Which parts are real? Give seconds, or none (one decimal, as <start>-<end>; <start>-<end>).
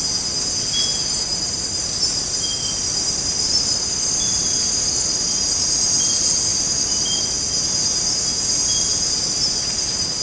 0.0-1.3; 5.1-6.5; 7.4-10.2